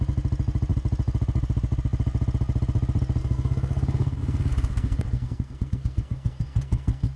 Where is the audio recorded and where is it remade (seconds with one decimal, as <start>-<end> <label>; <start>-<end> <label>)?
0.0-3.2 recorded; 3.2-7.2 remade